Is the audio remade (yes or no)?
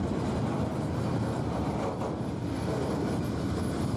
no